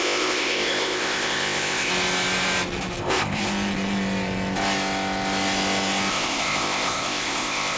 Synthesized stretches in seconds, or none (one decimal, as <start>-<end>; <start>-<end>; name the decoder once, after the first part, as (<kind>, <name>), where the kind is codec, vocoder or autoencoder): 0.0-1.9 (codec, ZipCodec); 3.0-3.4; 6.1-7.8